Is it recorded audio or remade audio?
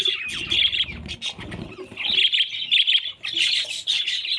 recorded